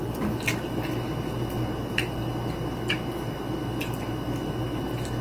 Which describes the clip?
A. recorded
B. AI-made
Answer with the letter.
A